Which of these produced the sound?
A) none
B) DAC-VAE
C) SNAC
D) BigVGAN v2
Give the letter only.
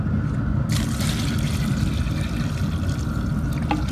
A